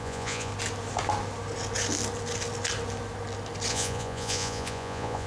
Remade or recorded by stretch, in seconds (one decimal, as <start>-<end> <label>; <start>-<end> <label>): 0.0-0.5 remade; 0.5-3.7 recorded; 3.7-5.3 remade